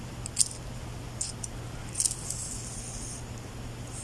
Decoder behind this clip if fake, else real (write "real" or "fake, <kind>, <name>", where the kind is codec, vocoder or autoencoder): real